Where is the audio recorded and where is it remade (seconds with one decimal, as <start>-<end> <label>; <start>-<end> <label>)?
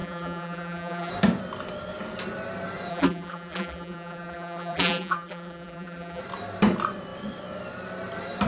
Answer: 0.0-1.1 remade; 1.1-2.9 recorded; 2.9-6.2 remade; 6.2-8.5 recorded